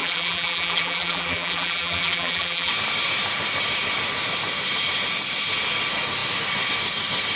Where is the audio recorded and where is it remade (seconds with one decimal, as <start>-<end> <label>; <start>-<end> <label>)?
0.0-2.7 remade; 2.7-7.4 recorded